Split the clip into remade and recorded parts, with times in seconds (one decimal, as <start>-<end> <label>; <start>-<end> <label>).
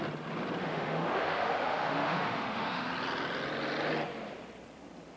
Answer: 0.0-0.6 recorded; 0.6-2.9 remade; 2.9-5.2 recorded